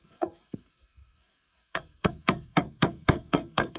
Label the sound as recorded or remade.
remade